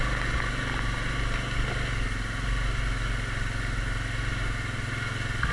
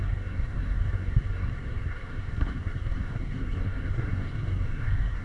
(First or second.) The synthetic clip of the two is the second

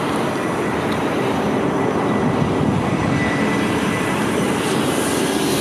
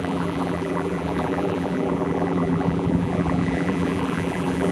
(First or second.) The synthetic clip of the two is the second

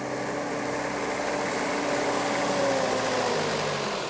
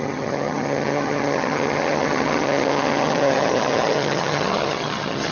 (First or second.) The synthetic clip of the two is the second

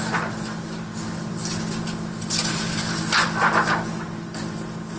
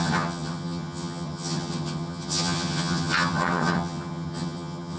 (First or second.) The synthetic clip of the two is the second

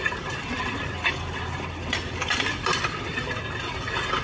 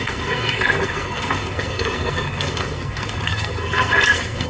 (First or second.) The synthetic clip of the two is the second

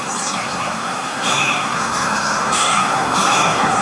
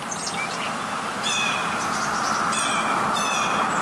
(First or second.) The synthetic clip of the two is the first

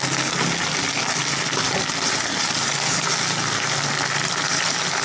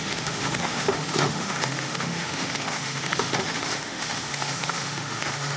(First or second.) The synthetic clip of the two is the second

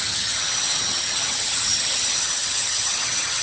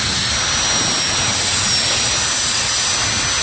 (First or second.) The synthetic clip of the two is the first